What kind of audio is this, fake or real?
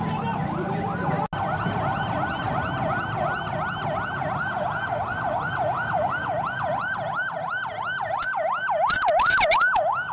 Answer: real